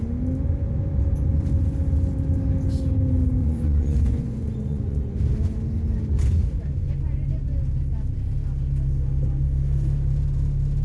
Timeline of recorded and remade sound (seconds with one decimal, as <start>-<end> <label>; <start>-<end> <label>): 0.0-3.4 recorded; 3.4-5.2 remade; 5.2-10.8 recorded